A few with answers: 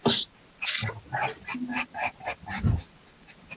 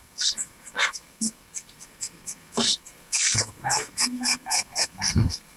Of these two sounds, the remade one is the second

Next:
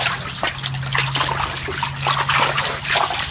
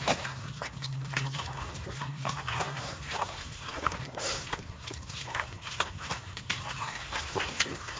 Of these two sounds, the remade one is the second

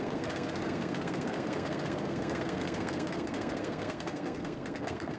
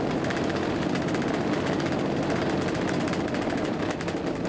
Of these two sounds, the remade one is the first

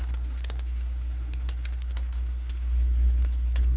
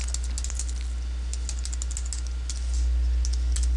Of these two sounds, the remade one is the first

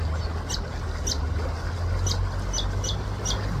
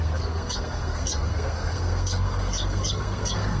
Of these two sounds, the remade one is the second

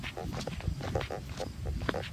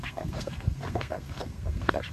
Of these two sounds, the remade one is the second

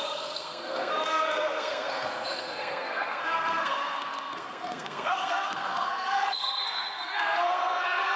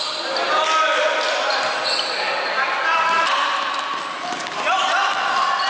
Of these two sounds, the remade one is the first